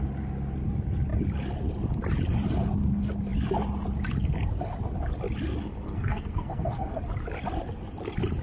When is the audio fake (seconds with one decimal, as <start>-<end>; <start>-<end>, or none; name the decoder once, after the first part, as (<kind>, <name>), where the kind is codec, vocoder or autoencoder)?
5.6-7.0 (codec, SNAC)